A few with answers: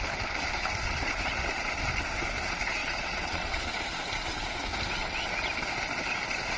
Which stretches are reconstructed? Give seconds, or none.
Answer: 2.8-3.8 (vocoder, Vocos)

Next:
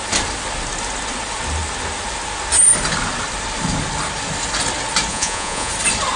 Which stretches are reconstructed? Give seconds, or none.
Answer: 5.1-5.7 (vocoder, Vocos)

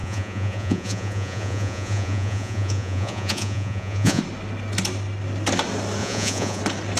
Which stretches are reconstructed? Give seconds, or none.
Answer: 0.0-4.2 (vocoder, Vocos); 6.0-6.6

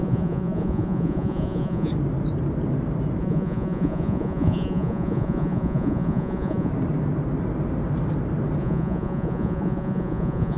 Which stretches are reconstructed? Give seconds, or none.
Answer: 0.0-1.9 (vocoder, Vocos); 3.2-6.7; 8.6-10.6